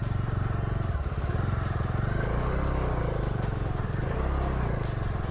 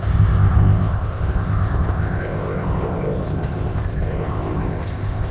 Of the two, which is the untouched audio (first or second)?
first